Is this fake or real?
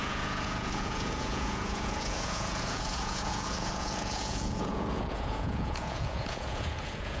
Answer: fake